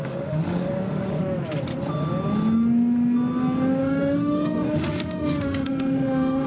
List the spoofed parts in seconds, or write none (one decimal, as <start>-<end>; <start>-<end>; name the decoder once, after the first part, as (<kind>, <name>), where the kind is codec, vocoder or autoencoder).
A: 0.0-1.2 (autoencoder, DAC-VAE); 3.8-6.5